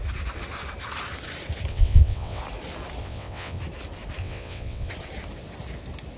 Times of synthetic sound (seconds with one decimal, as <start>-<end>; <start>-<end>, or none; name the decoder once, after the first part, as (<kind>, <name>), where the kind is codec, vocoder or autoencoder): 1.7-2.4 (vocoder, WaveNeXt); 3.0-3.6; 4.2-4.9